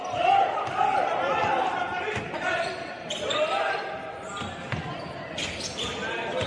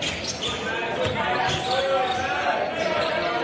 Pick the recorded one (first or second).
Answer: second